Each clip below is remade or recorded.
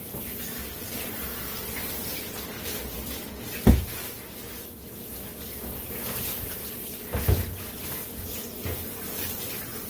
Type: recorded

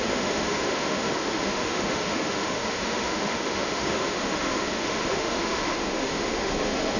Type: remade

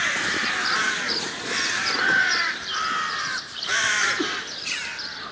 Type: remade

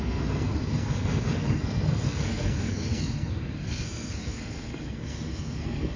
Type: remade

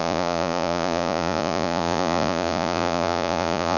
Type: remade